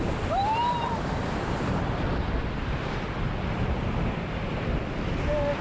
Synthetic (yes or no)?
no